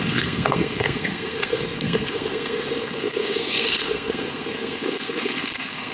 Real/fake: fake